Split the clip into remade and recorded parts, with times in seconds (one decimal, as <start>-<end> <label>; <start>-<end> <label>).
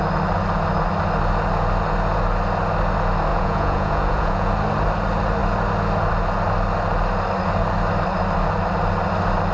0.0-3.3 recorded; 3.3-4.5 remade; 4.5-9.5 recorded